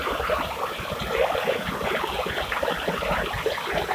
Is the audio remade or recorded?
recorded